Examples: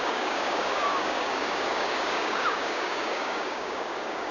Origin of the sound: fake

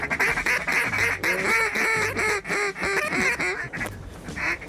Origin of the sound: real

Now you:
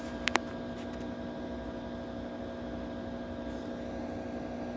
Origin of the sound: real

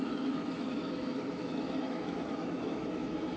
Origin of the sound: fake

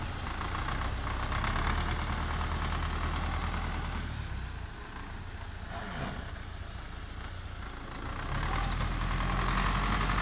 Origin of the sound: real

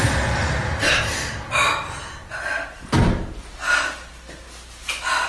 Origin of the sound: real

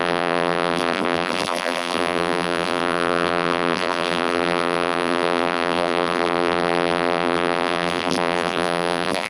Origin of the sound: fake